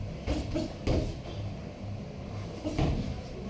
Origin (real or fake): real